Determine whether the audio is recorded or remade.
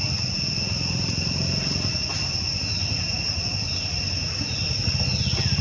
recorded